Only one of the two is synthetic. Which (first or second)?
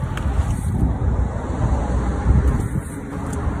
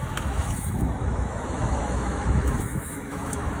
second